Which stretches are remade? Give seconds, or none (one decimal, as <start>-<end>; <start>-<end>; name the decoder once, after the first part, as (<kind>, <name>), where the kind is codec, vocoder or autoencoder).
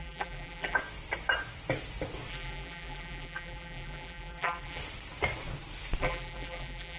0.0-0.8 (vocoder, BigVGAN v2); 2.3-4.8; 6.0-7.0